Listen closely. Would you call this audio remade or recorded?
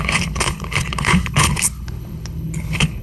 remade